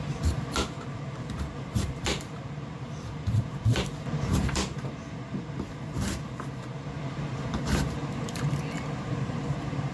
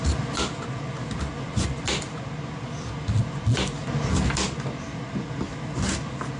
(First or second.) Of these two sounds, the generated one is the first